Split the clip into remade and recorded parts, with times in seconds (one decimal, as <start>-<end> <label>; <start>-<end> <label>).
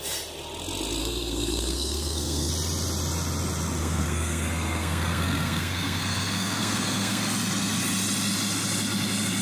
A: 0.0-1.0 recorded; 1.0-2.5 remade; 2.5-3.8 recorded; 3.8-7.2 remade; 7.2-9.4 recorded